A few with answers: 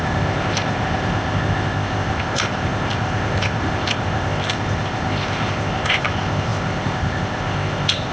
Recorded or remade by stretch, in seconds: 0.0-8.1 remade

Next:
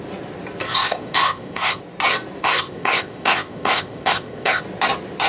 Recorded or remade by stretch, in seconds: 0.0-0.6 recorded; 0.6-1.8 remade; 1.8-2.4 recorded; 2.4-4.6 remade; 4.6-5.3 recorded

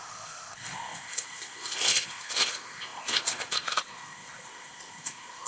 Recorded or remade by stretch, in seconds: 0.0-5.5 remade